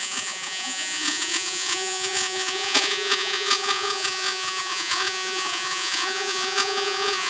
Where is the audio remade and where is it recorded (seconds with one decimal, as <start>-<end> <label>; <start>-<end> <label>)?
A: 0.0-7.3 remade